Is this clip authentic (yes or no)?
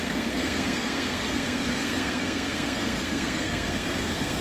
no